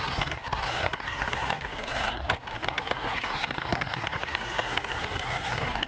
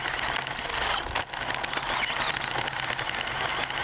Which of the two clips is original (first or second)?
second